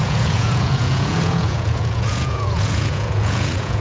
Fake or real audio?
fake